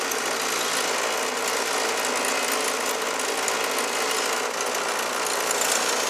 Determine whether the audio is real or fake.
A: real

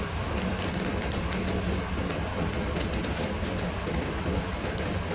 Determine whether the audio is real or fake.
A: real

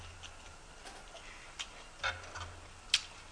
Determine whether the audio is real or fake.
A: real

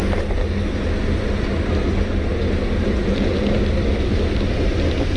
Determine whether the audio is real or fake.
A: real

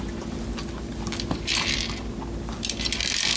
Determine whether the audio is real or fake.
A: real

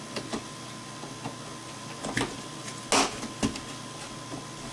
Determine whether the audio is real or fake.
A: real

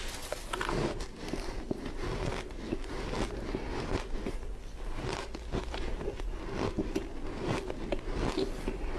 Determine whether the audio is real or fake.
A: real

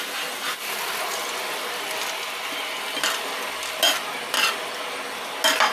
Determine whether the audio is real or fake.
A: real